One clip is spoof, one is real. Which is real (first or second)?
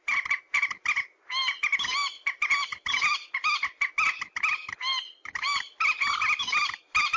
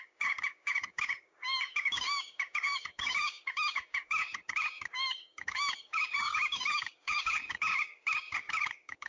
first